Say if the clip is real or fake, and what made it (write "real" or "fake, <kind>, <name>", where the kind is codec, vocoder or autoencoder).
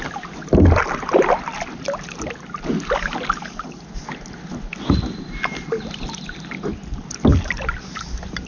real